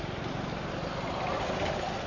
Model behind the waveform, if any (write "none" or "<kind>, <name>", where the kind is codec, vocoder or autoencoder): none